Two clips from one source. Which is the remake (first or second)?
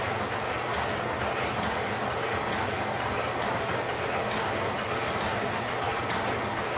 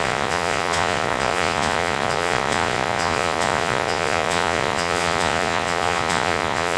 second